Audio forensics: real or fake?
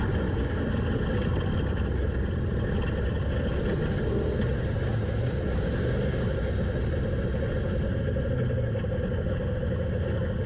real